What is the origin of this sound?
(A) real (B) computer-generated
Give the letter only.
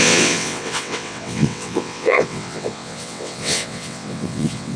B